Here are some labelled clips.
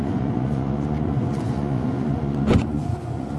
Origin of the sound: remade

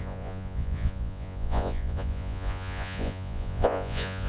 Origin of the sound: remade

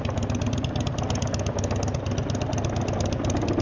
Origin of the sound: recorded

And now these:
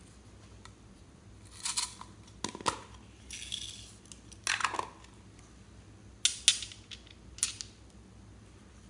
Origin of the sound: recorded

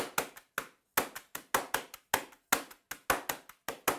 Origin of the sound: recorded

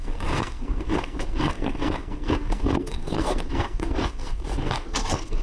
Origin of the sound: remade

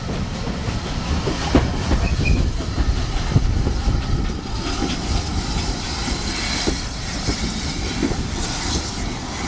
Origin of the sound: recorded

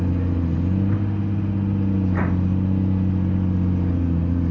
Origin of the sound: recorded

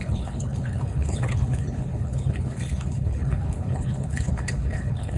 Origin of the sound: remade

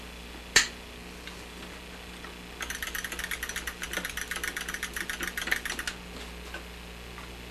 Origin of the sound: recorded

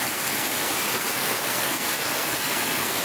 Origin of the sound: remade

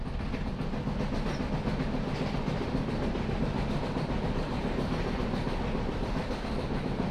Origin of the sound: recorded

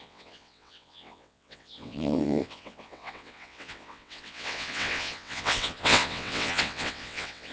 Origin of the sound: remade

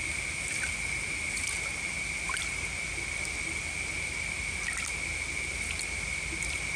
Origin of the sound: recorded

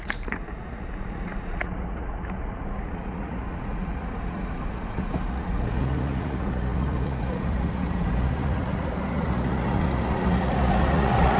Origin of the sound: remade